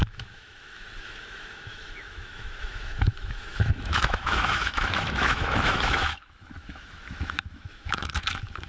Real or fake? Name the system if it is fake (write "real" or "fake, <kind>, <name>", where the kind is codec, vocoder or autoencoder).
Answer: fake, autoencoder, DAC-VAE